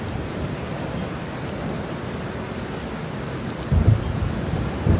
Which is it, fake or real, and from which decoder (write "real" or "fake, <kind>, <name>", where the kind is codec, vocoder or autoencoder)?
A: real